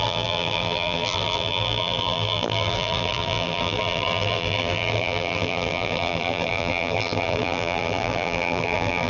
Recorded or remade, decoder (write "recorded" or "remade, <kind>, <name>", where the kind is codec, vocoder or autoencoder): remade, vocoder, BigVGAN v2